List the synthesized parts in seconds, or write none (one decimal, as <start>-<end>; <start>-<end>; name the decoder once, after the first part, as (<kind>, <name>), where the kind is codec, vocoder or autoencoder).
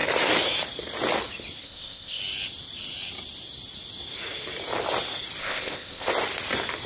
1.6-2.2 (codec, ZipCodec); 5.4-6.1